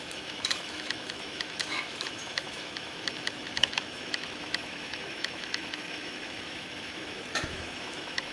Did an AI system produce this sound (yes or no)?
yes